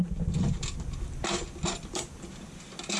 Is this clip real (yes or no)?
yes